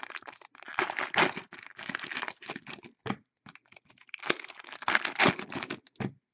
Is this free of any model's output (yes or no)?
yes